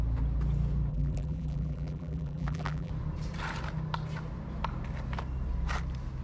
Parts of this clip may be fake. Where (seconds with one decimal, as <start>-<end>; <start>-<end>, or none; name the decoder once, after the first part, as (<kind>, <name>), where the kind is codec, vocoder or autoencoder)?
0.9-2.9 (vocoder, BigVGAN v2)